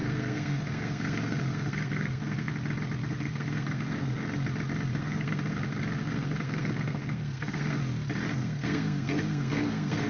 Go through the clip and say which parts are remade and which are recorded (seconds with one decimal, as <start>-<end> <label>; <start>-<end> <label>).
0.0-2.5 remade; 2.5-3.1 recorded; 3.1-4.2 remade; 4.2-4.9 recorded; 4.9-7.8 remade; 7.8-8.3 recorded; 8.3-10.1 remade